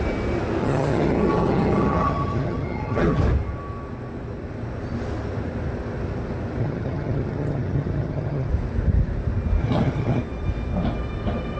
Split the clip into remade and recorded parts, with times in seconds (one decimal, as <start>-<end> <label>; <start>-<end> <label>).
0.0-0.6 recorded; 0.6-3.2 remade; 3.2-6.6 recorded; 6.6-8.5 remade; 8.5-9.6 recorded; 9.6-10.2 remade; 10.2-11.6 recorded